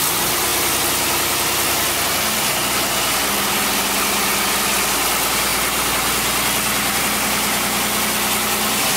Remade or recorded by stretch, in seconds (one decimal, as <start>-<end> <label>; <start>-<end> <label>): 0.0-9.0 recorded